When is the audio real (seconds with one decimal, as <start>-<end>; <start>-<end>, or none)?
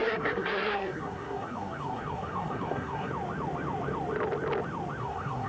3.1-5.0